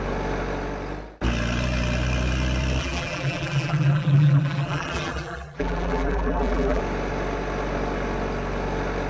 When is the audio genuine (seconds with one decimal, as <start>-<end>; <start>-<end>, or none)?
0.0-2.8; 6.8-9.1